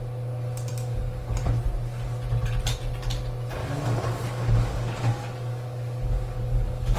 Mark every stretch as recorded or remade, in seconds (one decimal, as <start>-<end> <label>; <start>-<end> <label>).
0.0-0.7 recorded; 0.7-1.4 remade; 1.4-3.6 recorded; 3.6-7.0 remade